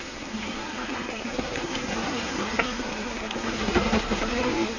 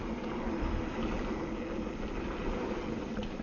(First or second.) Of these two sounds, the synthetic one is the first